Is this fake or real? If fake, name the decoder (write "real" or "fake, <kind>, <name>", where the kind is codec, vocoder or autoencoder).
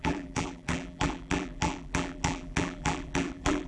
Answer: fake, vocoder, BigVGAN v2